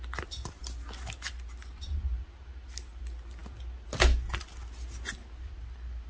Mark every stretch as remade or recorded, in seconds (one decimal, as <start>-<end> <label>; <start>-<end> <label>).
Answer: 0.0-6.1 recorded